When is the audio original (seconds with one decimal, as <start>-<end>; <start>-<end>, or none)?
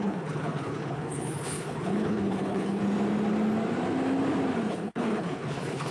2.8-4.7